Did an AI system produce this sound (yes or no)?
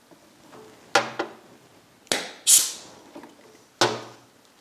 no